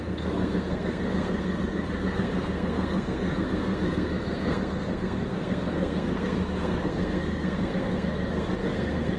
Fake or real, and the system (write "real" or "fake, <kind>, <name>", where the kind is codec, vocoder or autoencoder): fake, codec, SNAC